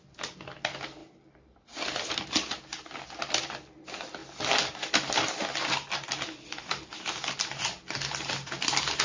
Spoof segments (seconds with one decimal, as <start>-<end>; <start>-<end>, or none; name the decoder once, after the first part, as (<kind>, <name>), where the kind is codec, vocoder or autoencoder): none